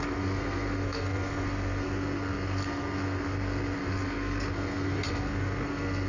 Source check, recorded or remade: remade